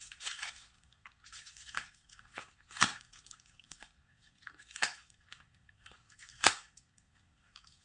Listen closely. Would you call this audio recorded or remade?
remade